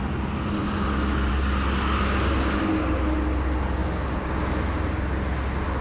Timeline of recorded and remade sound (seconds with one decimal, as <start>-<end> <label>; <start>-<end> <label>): 0.0-5.8 recorded